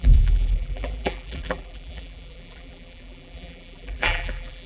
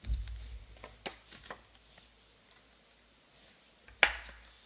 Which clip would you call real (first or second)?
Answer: second